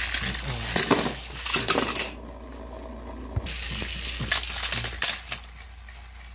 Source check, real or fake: real